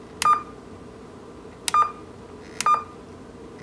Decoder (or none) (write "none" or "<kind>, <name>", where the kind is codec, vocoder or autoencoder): none